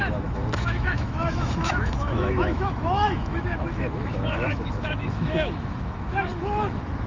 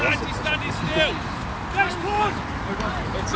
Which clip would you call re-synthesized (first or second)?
first